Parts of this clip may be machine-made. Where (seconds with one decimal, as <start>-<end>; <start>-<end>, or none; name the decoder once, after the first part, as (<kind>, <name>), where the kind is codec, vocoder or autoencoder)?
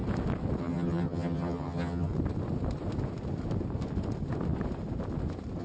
0.6-2.1 (vocoder, HiFi-GAN)